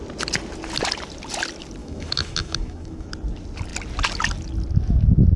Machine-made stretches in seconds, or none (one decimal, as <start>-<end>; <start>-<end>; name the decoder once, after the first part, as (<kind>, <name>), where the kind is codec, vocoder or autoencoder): 1.8-3.1 (autoencoder, DAC-VAE)